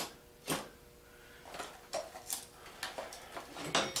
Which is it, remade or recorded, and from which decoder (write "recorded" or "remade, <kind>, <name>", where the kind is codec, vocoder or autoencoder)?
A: recorded